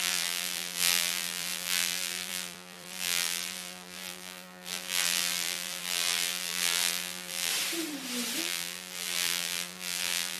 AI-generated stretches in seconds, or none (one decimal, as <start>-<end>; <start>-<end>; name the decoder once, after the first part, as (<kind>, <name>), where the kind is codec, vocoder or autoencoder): 0.0-7.5 (vocoder, BigVGAN v2); 8.4-10.4